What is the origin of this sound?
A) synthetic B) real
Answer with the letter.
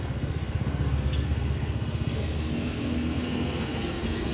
A